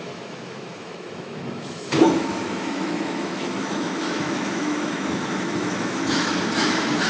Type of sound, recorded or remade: remade